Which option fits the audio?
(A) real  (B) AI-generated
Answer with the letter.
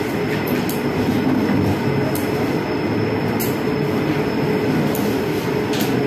A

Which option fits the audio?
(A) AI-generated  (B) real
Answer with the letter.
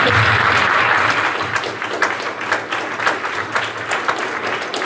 B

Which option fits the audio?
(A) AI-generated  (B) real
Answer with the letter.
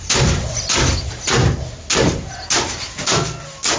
B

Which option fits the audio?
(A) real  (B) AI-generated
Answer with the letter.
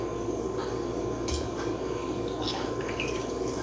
B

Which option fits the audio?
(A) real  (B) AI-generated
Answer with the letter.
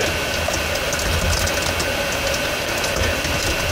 A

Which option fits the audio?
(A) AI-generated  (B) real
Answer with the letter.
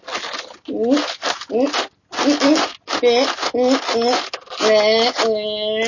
B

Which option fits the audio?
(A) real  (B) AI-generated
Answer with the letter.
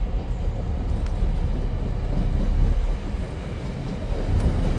A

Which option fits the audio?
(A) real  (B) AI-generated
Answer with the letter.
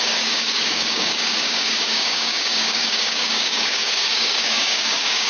B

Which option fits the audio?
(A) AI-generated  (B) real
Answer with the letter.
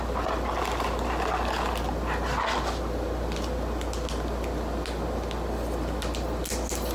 B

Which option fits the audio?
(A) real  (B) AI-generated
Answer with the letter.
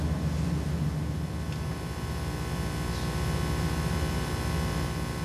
A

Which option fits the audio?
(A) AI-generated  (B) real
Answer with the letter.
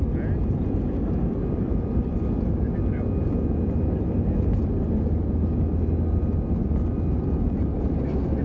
B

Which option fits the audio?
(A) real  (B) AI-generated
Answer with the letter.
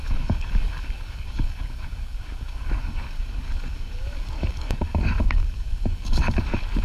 B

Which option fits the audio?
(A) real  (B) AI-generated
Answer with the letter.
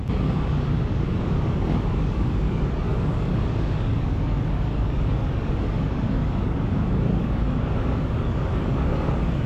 B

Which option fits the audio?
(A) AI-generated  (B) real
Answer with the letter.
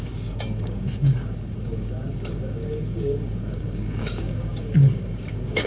A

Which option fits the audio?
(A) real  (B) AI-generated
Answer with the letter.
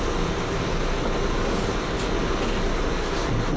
A